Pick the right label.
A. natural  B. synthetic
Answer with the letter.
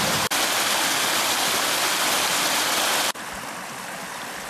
A